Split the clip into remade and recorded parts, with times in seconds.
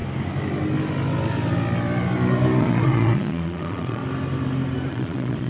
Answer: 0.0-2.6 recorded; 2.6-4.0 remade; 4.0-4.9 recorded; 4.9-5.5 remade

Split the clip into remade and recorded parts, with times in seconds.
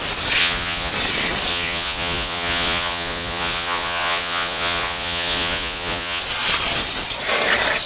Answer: 0.0-0.4 recorded; 0.4-0.9 remade; 0.9-1.5 recorded; 1.5-6.2 remade; 6.2-7.9 recorded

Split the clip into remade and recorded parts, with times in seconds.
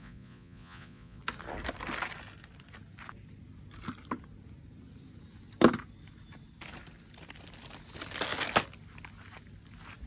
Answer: 0.0-1.2 remade; 1.2-10.1 recorded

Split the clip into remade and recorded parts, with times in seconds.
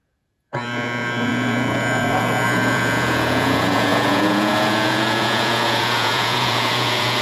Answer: 0.0-7.2 remade